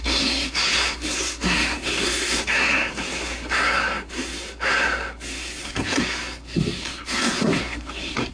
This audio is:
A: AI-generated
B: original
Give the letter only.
A